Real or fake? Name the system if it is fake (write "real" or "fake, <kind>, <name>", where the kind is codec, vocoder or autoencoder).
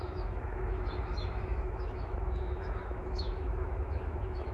fake, autoencoder, DAC-VAE